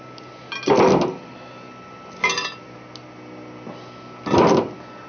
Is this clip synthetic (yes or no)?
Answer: no